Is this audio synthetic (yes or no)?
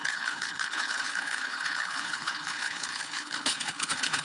yes